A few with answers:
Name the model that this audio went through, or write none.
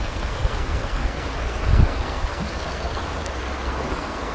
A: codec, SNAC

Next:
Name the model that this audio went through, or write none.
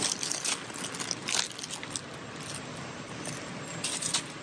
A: none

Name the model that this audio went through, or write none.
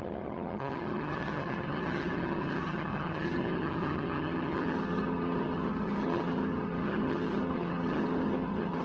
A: vocoder, HiFi-GAN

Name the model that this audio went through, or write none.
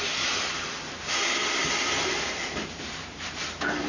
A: vocoder, BigVGAN v2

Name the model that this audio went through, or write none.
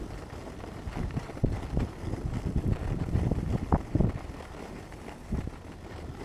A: none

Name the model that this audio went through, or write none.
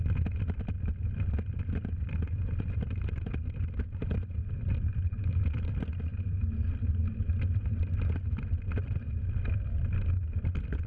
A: none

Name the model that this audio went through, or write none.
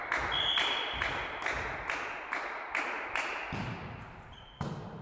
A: none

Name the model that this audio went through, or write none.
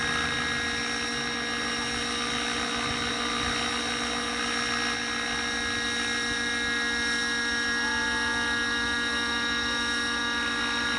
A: none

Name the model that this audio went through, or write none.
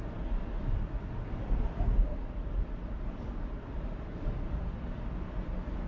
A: vocoder, BigVGAN v2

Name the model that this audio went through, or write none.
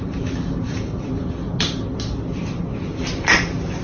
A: none